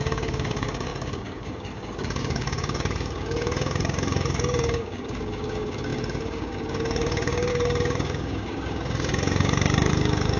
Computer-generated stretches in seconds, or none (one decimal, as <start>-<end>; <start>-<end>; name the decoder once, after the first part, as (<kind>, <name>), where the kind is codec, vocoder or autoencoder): 0.0-10.4 (codec, DAC)